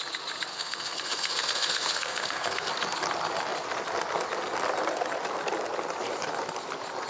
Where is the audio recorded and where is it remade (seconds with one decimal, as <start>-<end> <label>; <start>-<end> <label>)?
0.0-0.5 recorded; 0.5-2.7 remade; 2.7-7.1 recorded